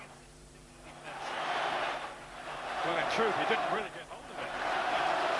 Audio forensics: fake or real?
fake